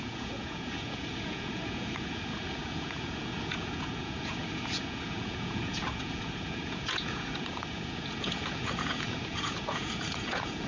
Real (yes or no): no